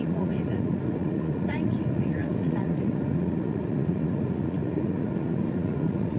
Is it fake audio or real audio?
fake